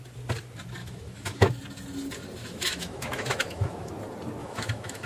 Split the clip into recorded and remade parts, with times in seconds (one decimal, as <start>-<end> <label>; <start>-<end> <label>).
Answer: 0.0-0.8 recorded; 0.8-1.6 remade; 1.6-2.4 recorded; 2.4-3.9 remade; 3.9-4.4 recorded; 4.4-5.1 remade